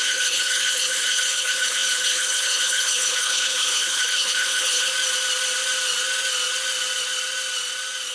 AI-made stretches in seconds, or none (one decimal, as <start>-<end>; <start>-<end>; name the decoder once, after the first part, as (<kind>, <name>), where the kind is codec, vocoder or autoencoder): 0.0-4.9 (codec, HILCodec)